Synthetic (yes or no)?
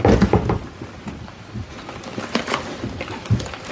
no